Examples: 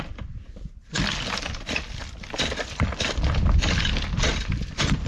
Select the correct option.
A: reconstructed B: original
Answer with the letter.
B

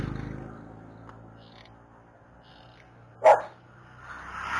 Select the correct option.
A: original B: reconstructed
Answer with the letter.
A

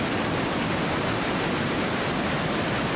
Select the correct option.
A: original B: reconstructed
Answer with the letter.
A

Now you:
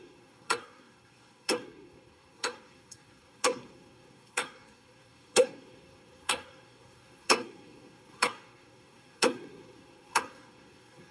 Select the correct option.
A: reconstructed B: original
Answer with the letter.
A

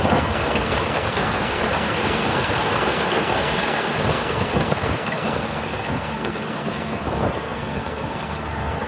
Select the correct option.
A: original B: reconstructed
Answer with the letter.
B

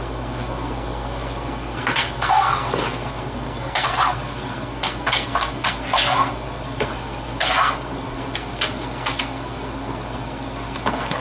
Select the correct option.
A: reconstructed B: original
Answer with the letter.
A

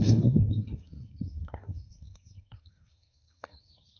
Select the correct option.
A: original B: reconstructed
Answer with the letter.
B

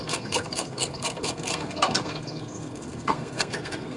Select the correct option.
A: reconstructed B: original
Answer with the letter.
A